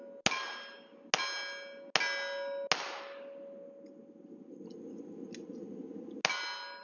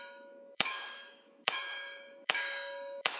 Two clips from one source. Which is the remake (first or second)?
second